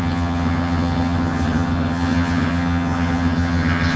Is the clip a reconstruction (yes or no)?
yes